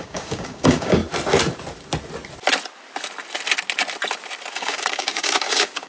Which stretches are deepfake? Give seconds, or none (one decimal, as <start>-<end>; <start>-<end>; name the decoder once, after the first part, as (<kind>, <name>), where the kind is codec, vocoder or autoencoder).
0.0-1.0 (codec, DAC); 4.5-5.9